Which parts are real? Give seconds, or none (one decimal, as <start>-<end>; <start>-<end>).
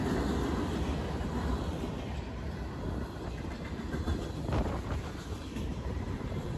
0.0-3.4; 4.1-5.4